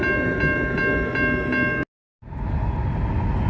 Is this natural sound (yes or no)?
yes